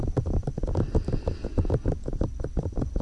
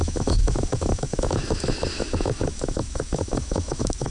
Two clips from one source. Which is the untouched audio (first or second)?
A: first